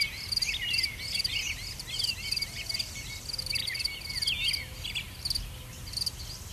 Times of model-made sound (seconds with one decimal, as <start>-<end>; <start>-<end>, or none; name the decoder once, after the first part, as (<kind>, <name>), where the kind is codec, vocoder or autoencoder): none